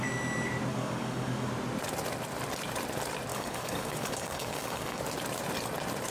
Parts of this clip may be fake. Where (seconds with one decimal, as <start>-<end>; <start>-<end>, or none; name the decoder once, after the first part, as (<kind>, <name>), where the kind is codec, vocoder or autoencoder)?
0.7-1.5 (codec, DAC); 3.3-5.0